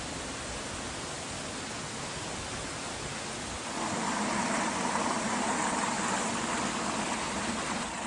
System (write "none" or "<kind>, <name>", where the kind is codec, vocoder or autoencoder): none